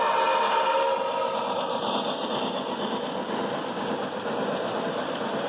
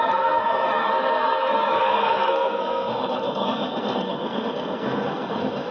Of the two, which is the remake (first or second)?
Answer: second